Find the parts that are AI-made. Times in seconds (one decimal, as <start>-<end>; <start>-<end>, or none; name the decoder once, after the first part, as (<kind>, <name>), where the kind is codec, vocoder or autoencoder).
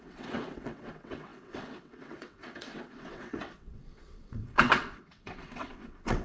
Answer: 0.0-6.2 (vocoder, WaveNeXt)